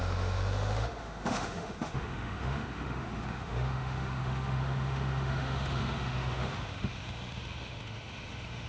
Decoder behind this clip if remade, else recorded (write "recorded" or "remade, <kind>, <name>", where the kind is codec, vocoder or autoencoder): remade, autoencoder, DAC-VAE